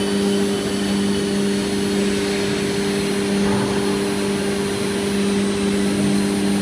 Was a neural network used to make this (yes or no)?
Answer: no